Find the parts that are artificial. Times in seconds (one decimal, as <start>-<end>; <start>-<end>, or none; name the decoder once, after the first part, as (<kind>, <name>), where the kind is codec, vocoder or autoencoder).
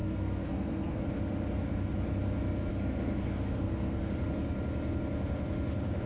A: 0.0-1.0 (codec, SNAC); 2.7-4.1